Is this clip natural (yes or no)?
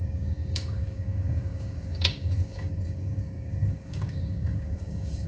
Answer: no